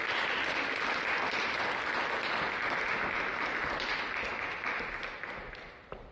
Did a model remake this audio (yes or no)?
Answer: no